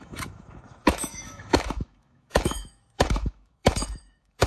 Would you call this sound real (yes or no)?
no